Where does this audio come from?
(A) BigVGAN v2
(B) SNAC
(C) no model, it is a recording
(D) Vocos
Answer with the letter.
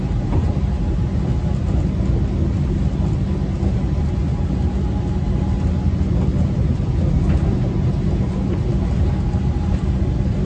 C